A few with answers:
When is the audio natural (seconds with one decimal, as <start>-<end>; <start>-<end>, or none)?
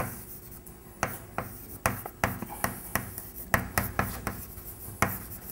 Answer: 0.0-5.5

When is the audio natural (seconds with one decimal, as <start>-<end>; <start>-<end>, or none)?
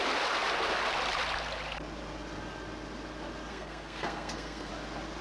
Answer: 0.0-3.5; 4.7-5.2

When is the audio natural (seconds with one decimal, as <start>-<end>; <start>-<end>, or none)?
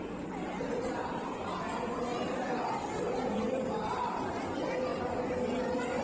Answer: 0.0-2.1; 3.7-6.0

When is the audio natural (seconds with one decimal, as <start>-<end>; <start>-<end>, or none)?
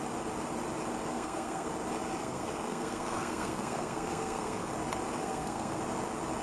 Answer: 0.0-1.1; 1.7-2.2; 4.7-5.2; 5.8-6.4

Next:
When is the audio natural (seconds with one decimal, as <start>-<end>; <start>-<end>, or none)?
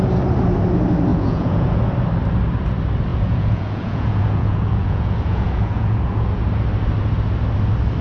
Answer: 0.0-1.1; 1.8-3.1; 6.4-8.0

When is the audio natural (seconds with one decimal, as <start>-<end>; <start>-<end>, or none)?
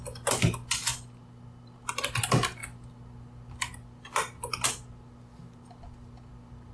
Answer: 0.0-6.7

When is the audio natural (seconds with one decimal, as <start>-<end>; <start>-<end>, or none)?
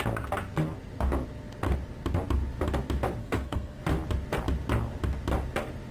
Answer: 0.0-3.2; 3.8-5.9